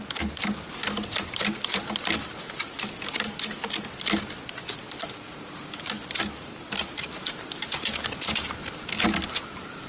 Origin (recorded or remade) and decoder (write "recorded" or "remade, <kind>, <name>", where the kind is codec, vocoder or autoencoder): recorded